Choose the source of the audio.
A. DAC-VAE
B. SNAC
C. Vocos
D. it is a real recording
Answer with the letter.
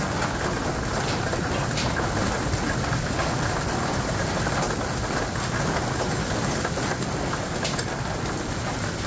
D